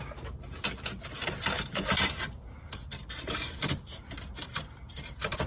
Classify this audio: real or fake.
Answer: fake